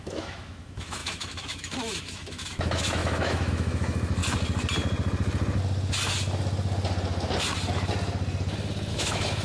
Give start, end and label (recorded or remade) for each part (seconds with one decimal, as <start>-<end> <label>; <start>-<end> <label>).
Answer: 0.0-4.2 remade; 4.2-8.9 recorded; 8.9-9.4 remade